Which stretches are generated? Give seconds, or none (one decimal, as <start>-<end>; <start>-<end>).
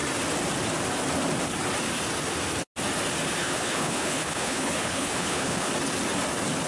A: 3.4-5.7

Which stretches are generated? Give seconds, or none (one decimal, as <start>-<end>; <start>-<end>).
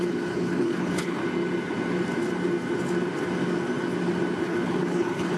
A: 0.0-1.2; 4.4-5.4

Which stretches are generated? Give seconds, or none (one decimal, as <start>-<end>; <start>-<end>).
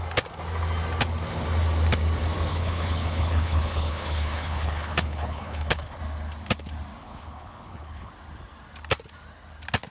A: 2.5-6.0; 7.0-8.1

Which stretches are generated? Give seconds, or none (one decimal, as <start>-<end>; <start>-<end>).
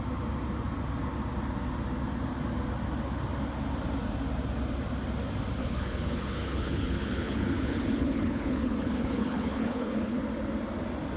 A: 5.6-10.2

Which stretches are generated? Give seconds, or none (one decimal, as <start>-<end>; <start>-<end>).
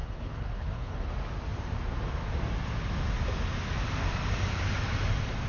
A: 0.0-1.1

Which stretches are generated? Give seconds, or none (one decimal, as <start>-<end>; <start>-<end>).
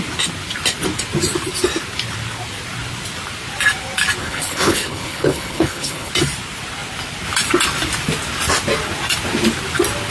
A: 4.2-6.1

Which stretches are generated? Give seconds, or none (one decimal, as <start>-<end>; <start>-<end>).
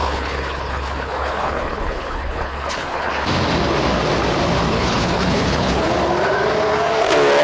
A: 0.0-3.1; 4.7-5.9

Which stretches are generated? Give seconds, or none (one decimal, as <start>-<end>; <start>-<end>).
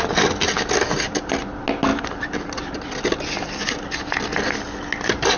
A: none